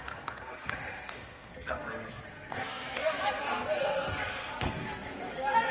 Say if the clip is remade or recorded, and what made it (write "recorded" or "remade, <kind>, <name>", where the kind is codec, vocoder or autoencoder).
remade, codec, SNAC